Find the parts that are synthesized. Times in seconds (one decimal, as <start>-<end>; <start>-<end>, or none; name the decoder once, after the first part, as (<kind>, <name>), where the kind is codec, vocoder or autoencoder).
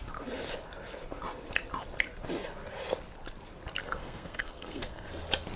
3.8-5.1 (codec, SNAC)